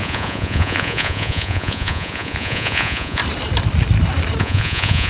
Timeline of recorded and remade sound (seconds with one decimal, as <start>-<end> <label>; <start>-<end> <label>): 0.0-3.2 remade; 3.2-4.4 recorded; 4.4-5.1 remade